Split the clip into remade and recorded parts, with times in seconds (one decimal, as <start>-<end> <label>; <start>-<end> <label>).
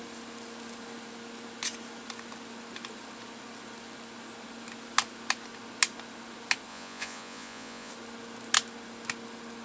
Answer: 0.0-6.7 recorded; 6.7-7.9 remade; 7.9-9.6 recorded